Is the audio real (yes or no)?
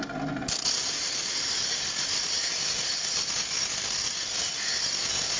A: yes